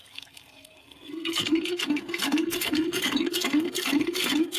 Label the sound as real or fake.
fake